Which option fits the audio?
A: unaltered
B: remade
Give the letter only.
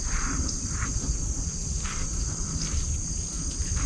A